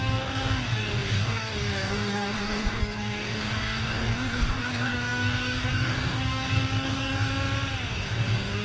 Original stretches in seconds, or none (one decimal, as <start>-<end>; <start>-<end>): 7.3-7.9